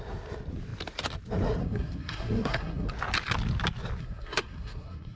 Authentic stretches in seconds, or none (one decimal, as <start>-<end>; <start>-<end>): 0.0-1.6; 2.9-4.0

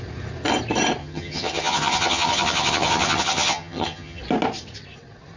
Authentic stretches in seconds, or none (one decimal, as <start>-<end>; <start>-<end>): 0.0-1.0; 4.2-5.4

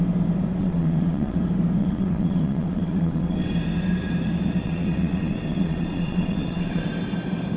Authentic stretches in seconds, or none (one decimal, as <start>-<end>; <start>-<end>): 0.0-0.6; 1.4-1.8; 3.5-4.6; 6.9-7.6